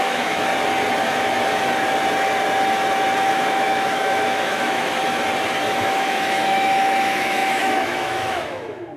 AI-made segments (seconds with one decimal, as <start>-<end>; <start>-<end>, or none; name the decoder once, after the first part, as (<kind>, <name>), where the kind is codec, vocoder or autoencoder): 0.0-0.5 (autoencoder, DAC-VAE); 3.3-5.0; 5.8-9.0